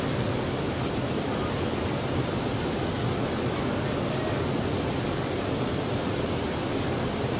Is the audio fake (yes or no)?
no